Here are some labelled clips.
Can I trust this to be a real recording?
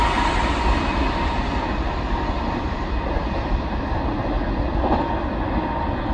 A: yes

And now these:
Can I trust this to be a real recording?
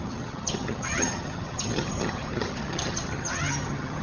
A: no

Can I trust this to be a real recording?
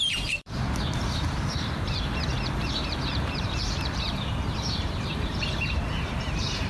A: no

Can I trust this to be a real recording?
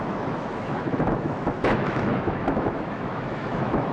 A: no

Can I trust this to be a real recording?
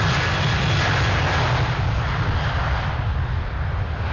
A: yes